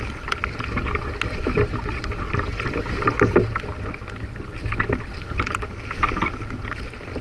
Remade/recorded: recorded